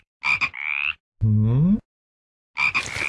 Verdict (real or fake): real